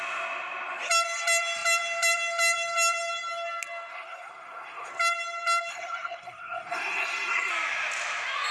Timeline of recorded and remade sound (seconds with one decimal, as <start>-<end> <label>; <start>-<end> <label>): 0.0-3.9 recorded; 3.9-4.9 remade; 4.9-5.7 recorded; 5.7-7.5 remade; 7.5-8.5 recorded

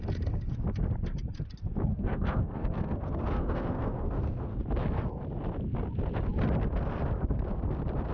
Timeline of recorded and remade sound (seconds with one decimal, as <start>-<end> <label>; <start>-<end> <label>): 0.0-1.9 recorded; 1.9-4.6 remade; 4.6-8.1 recorded